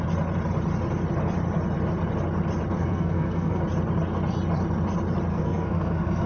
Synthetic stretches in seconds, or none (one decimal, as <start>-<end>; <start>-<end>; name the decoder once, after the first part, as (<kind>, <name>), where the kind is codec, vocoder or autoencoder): 2.8-3.6 (codec, SNAC); 5.3-6.3